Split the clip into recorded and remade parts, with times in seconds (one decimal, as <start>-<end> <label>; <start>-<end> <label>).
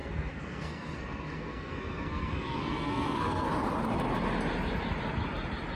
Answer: 0.0-3.5 remade; 3.5-5.8 recorded